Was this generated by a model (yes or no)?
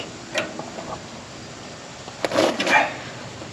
yes